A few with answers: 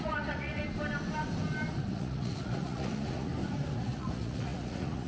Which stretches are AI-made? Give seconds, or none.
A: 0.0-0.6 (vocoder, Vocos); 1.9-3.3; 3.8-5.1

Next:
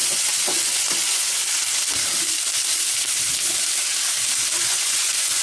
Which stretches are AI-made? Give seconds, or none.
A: 0.0-1.4 (vocoder, Vocos); 4.6-5.4

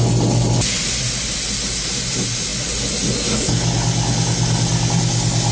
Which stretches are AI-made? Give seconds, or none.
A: none

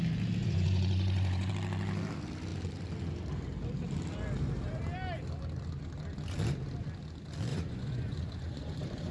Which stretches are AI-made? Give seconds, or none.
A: 0.4-1.5 (vocoder, Vocos); 7.5-9.1

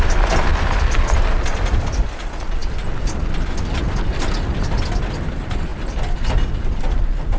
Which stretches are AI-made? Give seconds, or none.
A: none

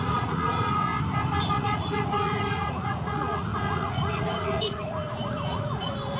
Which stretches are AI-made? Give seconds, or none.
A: 0.0-0.9 (vocoder, Vocos); 1.5-6.2

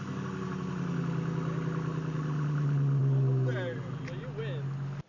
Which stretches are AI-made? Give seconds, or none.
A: none